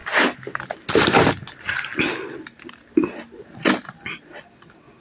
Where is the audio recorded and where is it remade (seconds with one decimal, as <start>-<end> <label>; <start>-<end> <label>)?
0.0-5.0 recorded